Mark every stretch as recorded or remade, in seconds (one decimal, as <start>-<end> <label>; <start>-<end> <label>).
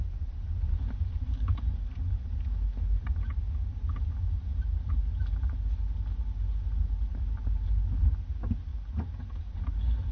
0.0-1.7 remade; 1.7-4.5 recorded; 4.5-5.0 remade; 5.0-8.7 recorded; 8.7-9.6 remade; 9.6-10.1 recorded